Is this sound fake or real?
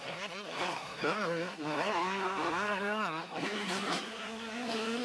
fake